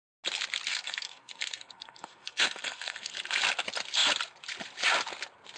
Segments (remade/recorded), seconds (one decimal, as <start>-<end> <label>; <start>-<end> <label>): 0.0-0.7 recorded; 0.7-3.1 remade; 3.1-5.6 recorded